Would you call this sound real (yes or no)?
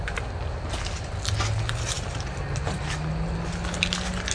yes